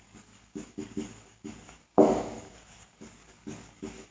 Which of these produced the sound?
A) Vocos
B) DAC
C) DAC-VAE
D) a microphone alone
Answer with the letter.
B